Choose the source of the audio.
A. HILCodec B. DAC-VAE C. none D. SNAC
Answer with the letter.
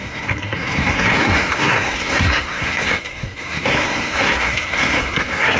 D